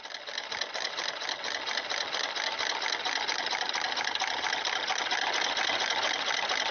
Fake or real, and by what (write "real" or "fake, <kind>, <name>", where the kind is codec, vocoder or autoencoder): real